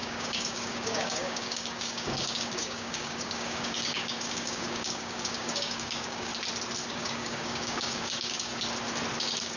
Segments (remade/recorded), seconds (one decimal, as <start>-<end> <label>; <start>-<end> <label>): 0.0-6.3 remade; 6.3-6.9 recorded; 6.9-8.5 remade; 8.5-9.2 recorded; 9.2-9.6 remade